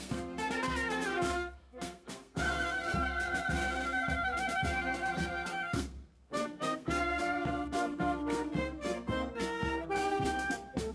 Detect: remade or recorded remade